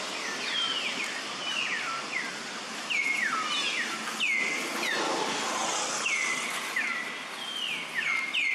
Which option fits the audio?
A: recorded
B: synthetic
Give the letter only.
A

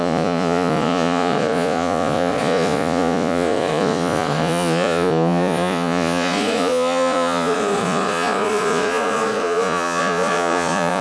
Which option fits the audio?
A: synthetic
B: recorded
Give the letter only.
A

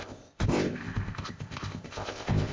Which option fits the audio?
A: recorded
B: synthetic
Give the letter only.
B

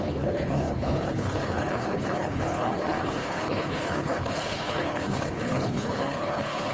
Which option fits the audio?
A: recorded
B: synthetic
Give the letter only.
B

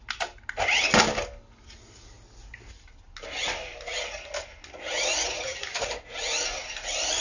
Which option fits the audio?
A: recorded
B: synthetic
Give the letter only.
A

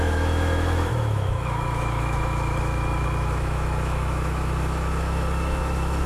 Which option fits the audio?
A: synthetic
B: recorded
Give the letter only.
A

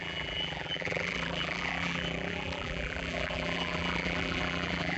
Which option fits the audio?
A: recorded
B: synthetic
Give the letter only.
B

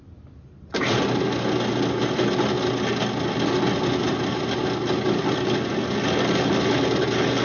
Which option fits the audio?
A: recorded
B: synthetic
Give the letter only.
A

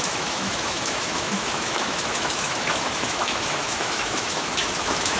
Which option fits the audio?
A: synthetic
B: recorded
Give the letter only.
A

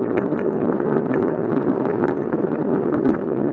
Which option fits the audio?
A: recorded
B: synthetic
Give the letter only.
B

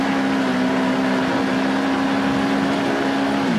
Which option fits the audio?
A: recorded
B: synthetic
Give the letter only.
A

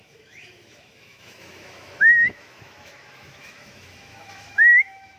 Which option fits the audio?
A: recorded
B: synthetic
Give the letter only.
B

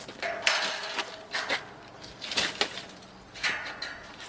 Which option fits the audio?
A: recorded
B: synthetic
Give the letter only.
A